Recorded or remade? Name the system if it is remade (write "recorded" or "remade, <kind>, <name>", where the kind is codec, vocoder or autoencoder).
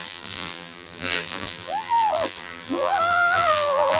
remade, vocoder, BigVGAN v2